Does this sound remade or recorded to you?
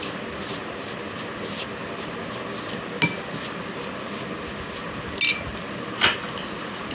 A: recorded